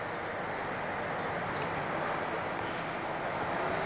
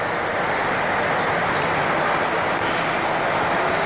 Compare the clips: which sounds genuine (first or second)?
first